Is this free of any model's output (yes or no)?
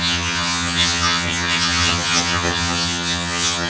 no